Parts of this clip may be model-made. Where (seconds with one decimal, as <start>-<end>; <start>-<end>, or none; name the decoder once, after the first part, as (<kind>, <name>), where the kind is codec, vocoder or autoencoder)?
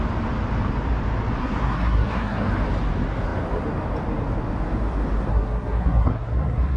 1.4-2.5 (codec, SNAC); 5.3-6.8